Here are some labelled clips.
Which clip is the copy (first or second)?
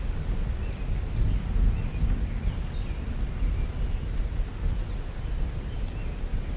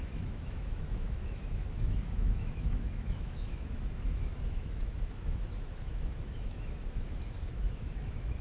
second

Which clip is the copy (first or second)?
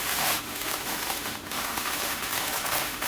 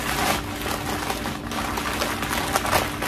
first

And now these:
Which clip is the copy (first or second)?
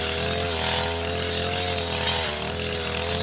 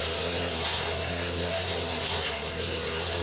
second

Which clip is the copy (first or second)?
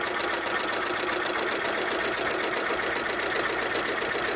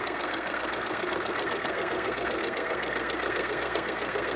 second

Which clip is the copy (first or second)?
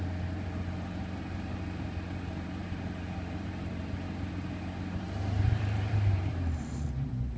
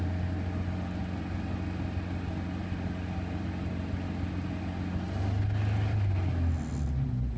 first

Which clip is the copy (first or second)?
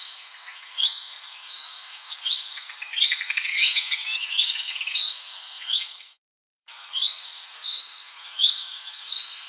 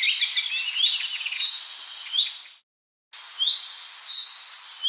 first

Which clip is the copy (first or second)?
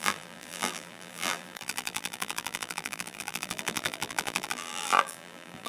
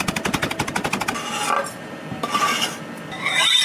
first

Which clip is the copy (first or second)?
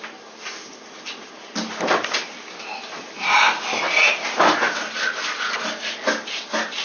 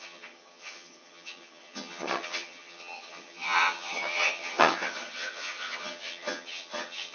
second